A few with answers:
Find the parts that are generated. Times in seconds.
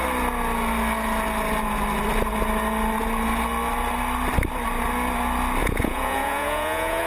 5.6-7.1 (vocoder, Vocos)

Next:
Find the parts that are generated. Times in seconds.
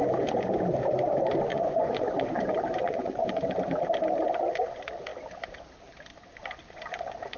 1.5-2.4 (vocoder, Vocos); 2.8-3.4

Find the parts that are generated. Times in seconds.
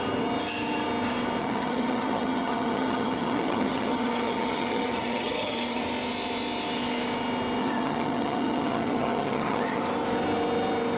1.4-5.8 (vocoder, HiFi-GAN); 7.6-9.8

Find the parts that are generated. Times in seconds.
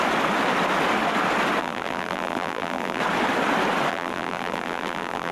1.6-3.0 (vocoder, BigVGAN v2); 3.9-5.3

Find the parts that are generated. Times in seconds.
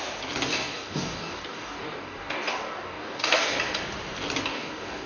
0.5-3.6 (codec, DAC); 4.5-5.1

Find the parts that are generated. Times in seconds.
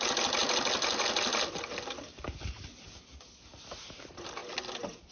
none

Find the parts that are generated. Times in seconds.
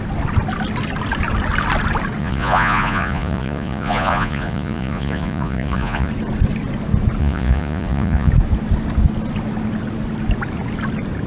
2.2-6.1 (vocoder, Vocos); 7.2-8.3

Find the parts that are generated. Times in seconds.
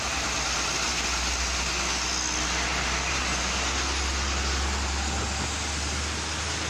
none